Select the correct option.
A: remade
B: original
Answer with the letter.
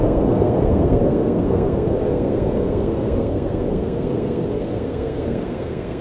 A